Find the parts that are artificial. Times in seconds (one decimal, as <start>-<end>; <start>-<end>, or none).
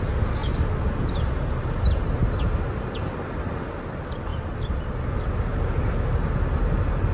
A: none